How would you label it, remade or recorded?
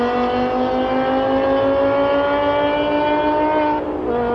recorded